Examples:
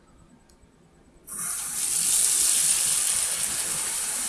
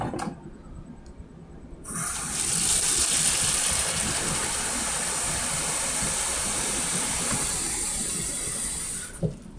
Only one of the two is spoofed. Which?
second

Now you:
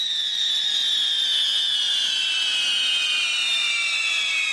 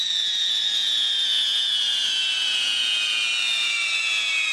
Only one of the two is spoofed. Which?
second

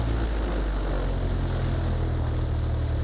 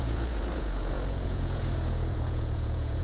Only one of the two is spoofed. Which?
second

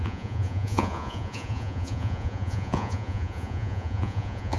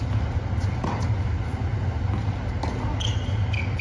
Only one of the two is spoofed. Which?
first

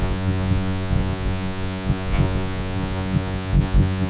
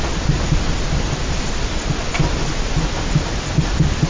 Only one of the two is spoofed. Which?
first